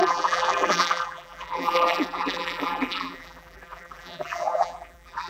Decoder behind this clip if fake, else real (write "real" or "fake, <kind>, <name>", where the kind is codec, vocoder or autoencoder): fake, vocoder, BigVGAN v2